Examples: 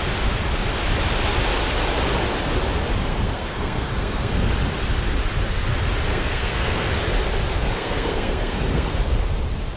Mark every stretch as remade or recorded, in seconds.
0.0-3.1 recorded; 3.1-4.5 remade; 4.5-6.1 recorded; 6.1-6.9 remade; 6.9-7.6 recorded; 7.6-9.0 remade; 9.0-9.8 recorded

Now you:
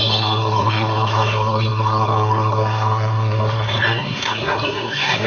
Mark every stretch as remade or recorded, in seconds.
0.0-5.3 remade

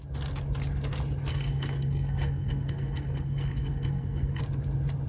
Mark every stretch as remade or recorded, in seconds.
0.0-1.3 recorded; 1.3-4.4 remade; 4.4-5.1 recorded

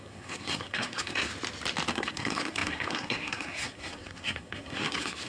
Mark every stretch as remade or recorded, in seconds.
0.0-1.3 remade; 1.3-1.9 recorded; 1.9-5.3 remade